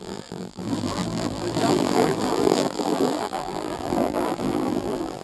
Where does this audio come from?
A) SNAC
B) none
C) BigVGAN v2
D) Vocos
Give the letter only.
C